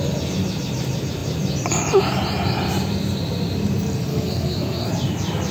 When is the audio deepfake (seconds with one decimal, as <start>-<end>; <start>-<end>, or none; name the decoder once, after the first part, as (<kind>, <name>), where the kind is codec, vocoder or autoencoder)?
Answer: 4.1-4.9 (codec, SNAC)